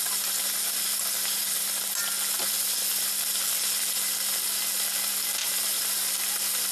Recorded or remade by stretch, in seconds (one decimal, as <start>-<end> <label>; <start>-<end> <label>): 0.0-5.4 recorded; 5.4-6.0 remade; 6.0-6.7 recorded